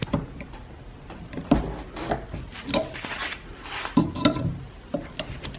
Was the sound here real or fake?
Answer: real